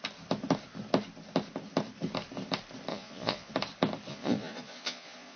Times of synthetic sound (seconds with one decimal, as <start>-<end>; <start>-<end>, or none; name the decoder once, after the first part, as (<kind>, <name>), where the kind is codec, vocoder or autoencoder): 2.9-3.5 (vocoder, Vocos); 4.1-5.4